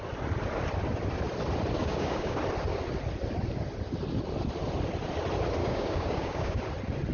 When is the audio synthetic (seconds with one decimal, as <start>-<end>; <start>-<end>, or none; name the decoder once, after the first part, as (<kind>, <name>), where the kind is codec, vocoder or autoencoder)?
1.8-2.4 (codec, DAC); 5.6-6.6